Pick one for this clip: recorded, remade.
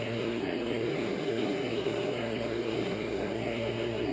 remade